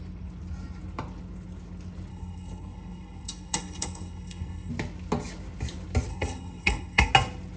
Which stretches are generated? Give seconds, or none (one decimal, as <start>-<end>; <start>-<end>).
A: 2.1-4.7; 6.1-7.1